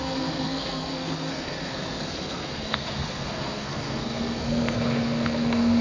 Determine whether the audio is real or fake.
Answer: fake